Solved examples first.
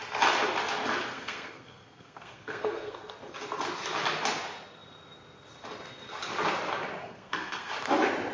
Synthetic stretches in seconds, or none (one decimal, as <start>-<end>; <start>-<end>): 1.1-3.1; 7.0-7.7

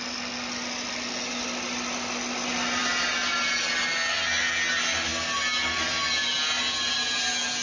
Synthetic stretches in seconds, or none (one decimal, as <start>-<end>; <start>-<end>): none

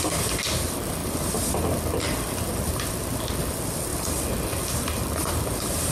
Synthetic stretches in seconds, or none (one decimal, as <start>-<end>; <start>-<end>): none

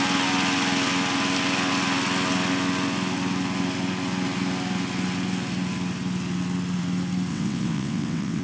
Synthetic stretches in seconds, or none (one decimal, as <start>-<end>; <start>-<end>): 7.3-8.4